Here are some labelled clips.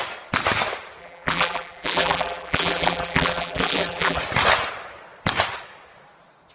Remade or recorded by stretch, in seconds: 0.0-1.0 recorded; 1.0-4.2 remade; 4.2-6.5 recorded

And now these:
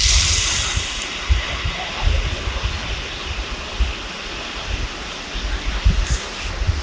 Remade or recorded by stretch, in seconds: 0.0-1.9 remade; 1.9-6.8 recorded

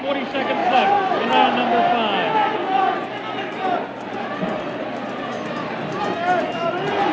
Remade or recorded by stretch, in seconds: 0.0-0.6 recorded; 0.6-1.3 remade; 1.3-7.1 recorded

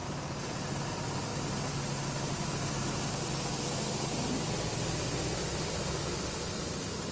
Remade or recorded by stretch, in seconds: 0.0-0.9 recorded; 0.9-1.3 remade; 1.3-4.3 recorded; 4.3-5.4 remade; 5.4-6.0 recorded; 6.0-7.1 remade

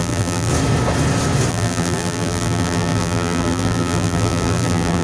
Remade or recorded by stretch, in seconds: 0.0-0.5 remade; 0.5-1.5 recorded; 1.5-5.0 remade

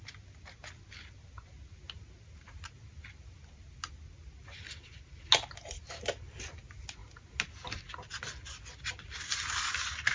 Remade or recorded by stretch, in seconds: 0.0-10.1 recorded

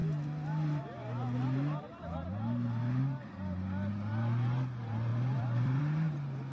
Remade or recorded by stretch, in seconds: 0.0-5.1 recorded; 5.1-5.8 remade; 5.8-6.5 recorded

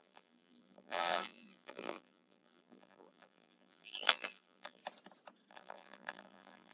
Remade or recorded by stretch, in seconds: 0.0-4.8 remade; 4.8-5.5 recorded; 5.5-6.7 remade